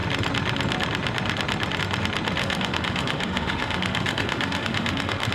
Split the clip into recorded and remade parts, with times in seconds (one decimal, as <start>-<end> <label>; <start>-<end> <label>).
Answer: 0.0-2.4 recorded; 2.4-5.3 remade